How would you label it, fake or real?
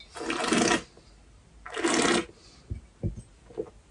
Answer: real